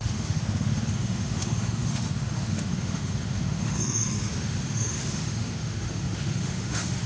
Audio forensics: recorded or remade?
remade